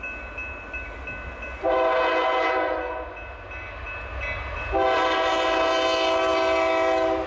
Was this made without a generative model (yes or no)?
yes